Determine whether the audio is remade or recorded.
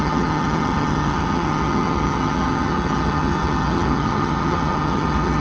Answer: remade